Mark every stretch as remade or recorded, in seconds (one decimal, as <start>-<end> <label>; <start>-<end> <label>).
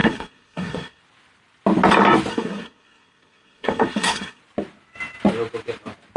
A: 0.0-1.0 remade; 1.0-2.3 recorded; 2.3-4.4 remade; 4.4-6.2 recorded